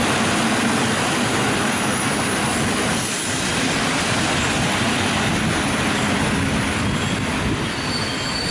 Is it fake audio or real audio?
real